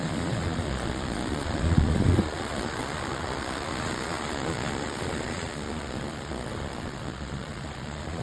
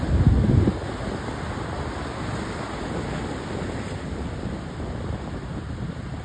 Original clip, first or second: second